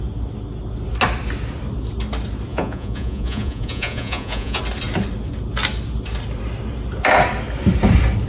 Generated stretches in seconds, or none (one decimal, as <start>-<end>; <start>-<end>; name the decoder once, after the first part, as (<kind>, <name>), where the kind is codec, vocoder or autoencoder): 2.5-4.6 (vocoder, Vocos)